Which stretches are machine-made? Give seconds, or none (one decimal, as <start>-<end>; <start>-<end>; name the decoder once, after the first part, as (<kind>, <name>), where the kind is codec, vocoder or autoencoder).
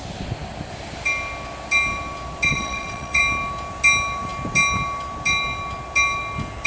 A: 2.5-3.2 (vocoder, WaveNeXt)